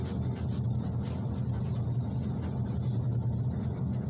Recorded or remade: recorded